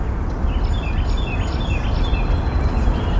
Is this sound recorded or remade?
recorded